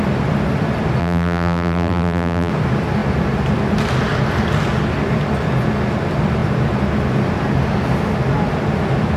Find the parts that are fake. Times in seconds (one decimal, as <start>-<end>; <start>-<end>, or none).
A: 1.0-2.5